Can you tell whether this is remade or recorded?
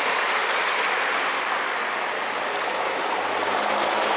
recorded